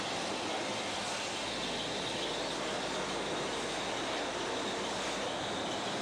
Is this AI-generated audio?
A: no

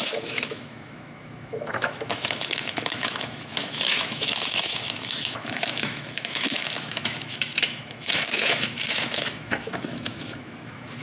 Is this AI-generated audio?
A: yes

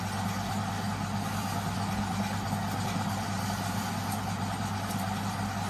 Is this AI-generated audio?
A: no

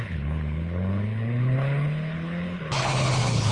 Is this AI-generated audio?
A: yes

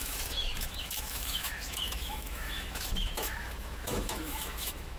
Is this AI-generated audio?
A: yes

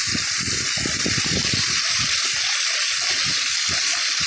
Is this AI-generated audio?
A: no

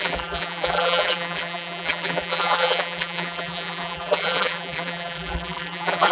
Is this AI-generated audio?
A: yes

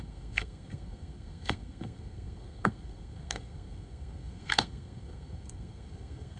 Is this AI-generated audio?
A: yes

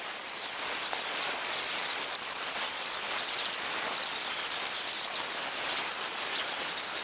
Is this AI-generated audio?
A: no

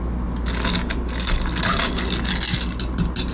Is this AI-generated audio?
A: no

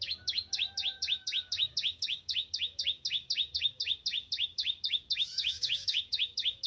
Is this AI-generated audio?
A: yes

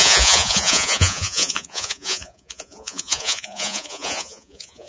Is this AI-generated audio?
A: yes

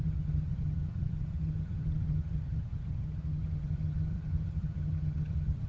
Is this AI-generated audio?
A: yes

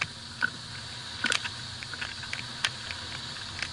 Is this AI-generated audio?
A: no